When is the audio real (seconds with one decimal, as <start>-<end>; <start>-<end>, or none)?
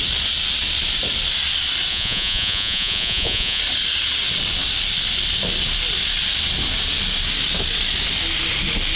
0.0-1.9; 3.6-9.0